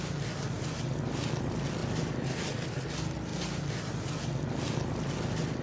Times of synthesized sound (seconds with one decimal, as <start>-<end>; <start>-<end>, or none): none